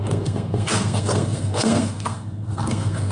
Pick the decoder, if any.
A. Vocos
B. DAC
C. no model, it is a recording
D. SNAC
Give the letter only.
D